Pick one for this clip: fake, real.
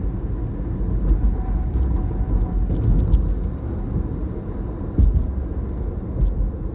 real